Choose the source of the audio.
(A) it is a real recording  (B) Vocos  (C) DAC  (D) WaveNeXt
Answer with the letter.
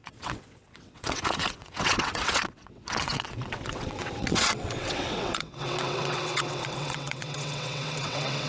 D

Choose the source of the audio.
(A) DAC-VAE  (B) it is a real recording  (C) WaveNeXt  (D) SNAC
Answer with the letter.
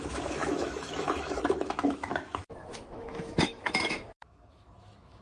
A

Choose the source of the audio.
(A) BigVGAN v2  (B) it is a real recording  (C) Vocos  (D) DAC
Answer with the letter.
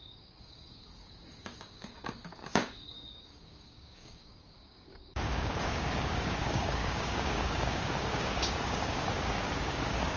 D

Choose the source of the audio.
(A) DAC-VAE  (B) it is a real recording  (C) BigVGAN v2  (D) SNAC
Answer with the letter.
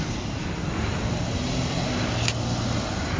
B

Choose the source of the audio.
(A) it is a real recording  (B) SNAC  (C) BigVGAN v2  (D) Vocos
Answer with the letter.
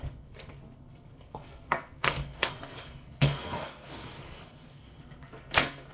B